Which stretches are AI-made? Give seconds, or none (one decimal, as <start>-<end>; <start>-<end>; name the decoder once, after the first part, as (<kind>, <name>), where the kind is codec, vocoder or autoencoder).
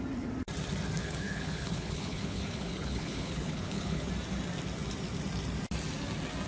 1.0-4.1 (codec, HILCodec)